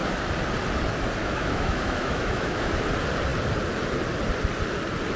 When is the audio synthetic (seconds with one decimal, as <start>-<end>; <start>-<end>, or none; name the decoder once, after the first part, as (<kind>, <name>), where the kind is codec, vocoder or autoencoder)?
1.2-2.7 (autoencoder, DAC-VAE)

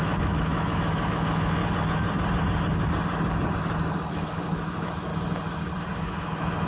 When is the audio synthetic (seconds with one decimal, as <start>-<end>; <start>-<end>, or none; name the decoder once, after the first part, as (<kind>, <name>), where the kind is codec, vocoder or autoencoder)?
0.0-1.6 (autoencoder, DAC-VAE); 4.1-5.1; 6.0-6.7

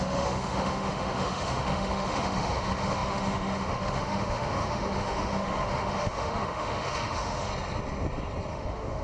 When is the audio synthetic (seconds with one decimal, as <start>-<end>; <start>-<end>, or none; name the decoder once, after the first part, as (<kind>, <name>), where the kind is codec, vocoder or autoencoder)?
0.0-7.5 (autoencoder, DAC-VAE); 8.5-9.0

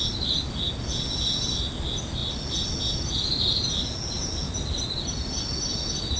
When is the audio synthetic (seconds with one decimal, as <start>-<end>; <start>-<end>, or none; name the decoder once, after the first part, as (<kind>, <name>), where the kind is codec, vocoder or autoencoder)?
none

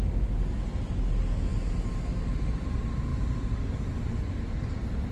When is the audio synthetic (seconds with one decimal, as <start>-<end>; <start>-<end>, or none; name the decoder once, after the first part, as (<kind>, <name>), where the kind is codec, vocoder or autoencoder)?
none

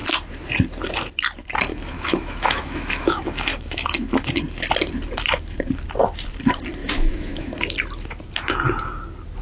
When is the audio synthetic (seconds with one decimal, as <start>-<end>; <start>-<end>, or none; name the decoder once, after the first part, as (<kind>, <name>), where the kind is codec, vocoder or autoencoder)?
1.7-4.4 (autoencoder, DAC-VAE); 6.8-7.5